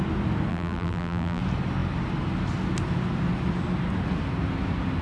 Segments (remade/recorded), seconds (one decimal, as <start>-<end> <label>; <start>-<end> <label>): 0.0-0.5 recorded; 0.5-1.4 remade; 1.4-5.0 recorded